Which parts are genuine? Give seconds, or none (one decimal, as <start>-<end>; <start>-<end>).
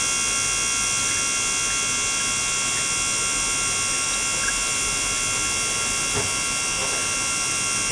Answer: 0.0-7.9